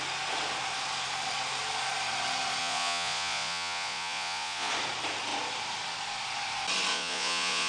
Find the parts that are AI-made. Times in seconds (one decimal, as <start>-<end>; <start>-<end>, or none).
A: 2.6-4.7; 6.9-7.7